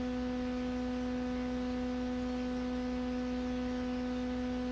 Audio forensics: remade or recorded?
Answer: recorded